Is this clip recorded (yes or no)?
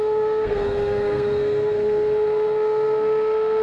no